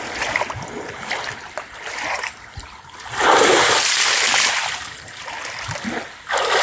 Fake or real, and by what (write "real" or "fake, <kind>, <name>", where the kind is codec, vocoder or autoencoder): real